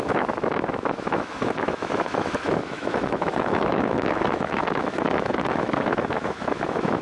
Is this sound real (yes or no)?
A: no